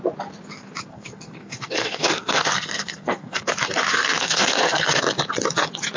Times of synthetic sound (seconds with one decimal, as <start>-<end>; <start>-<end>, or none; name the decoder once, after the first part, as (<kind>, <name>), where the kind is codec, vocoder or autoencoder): 0.9-3.4 (codec, SNAC); 3.9-5.0